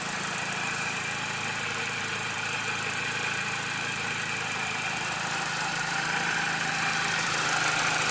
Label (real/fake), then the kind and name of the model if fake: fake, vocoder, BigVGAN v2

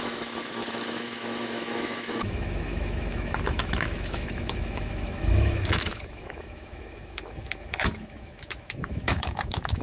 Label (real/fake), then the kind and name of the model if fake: fake, autoencoder, DAC-VAE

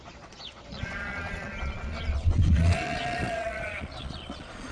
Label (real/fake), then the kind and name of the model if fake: fake, vocoder, Vocos